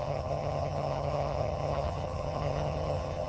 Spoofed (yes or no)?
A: yes